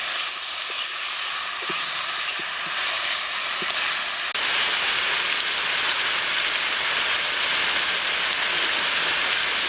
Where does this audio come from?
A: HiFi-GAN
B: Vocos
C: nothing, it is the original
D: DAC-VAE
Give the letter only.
C